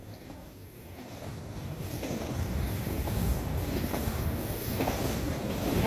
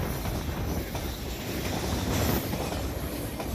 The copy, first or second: first